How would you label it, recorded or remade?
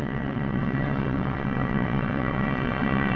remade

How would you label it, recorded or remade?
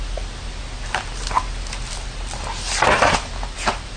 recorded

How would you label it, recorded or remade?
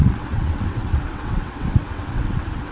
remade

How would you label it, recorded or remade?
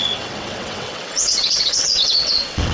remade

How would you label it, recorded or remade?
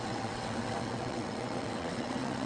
remade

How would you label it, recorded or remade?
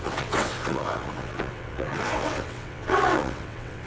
remade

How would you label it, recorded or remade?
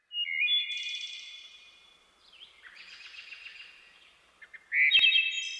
recorded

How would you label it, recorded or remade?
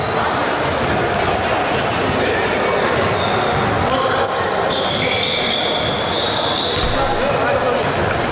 recorded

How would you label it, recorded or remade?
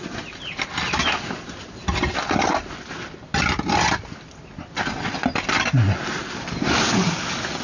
recorded